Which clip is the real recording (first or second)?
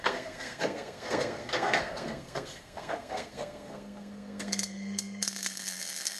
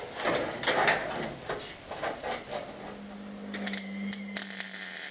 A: second